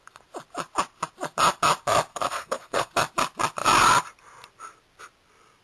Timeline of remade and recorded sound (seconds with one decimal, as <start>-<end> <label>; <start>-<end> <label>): 0.0-2.1 recorded; 2.1-2.9 remade; 2.9-5.6 recorded